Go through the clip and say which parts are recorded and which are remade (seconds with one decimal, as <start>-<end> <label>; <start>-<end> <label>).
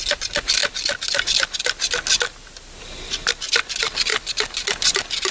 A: 0.0-5.3 recorded